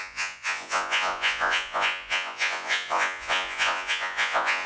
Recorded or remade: remade